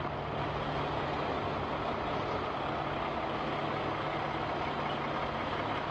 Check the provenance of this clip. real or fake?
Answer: real